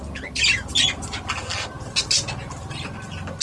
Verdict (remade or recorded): recorded